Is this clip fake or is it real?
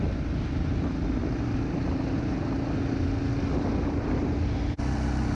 real